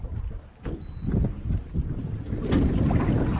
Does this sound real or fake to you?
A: real